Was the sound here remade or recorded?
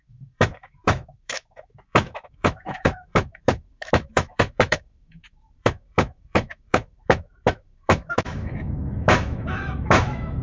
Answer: remade